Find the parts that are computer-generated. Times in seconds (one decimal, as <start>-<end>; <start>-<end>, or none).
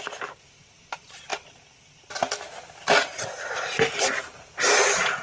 none